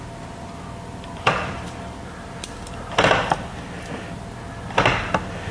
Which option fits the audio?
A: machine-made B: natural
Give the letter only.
B